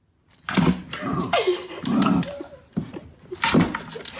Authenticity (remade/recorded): recorded